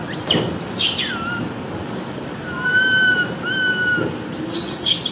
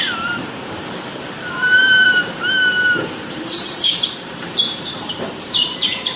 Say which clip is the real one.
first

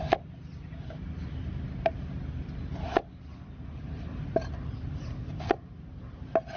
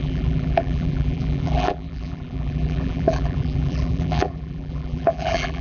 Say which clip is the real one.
first